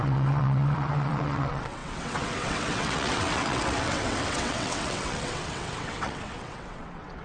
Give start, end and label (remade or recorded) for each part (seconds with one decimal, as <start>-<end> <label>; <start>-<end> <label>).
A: 0.0-7.2 remade